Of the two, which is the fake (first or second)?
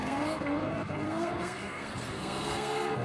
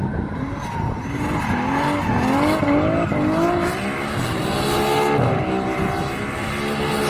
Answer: first